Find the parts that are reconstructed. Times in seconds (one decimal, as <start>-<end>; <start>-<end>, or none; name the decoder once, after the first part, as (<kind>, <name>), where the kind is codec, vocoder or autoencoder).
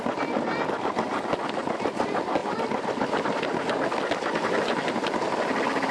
none